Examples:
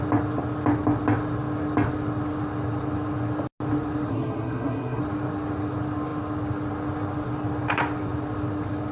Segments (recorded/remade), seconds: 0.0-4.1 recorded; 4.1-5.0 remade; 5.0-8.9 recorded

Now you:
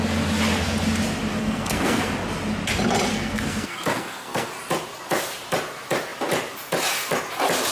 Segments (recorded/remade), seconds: 0.0-1.4 recorded; 1.4-2.1 remade; 2.1-3.1 recorded; 3.1-4.5 remade; 4.5-7.7 recorded